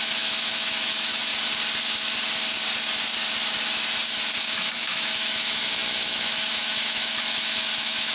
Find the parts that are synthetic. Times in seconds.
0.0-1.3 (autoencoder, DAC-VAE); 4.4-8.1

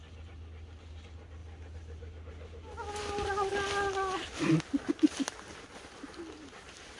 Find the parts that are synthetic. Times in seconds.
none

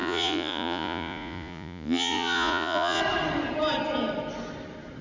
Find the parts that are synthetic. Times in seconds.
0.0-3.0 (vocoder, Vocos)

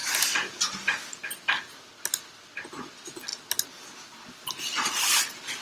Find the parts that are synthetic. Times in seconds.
0.0-0.8 (vocoder, BigVGAN v2)

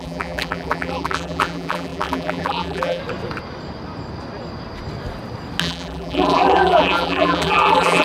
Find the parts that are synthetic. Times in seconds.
0.0-3.0 (vocoder, BigVGAN v2); 5.6-8.0

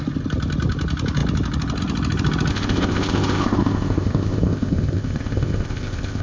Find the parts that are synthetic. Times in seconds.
2.5-6.2 (codec, ZipCodec)

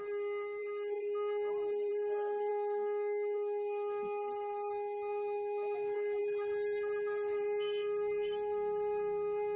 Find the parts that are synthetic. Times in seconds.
2.5-6.2 (autoencoder, DAC-VAE)

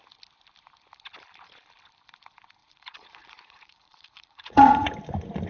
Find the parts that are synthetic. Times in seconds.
2.6-4.9 (vocoder, Vocos)